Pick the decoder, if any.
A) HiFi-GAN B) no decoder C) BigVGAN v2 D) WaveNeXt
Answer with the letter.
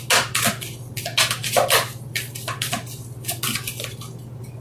B